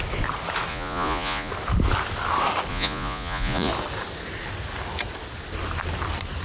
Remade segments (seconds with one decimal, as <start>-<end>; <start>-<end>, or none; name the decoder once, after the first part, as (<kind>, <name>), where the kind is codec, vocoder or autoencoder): 0.7-1.5 (vocoder, Vocos); 2.7-3.7